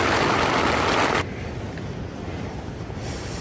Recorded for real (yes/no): yes